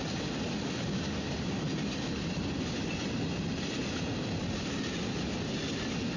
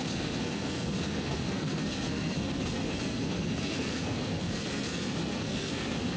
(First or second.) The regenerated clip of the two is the second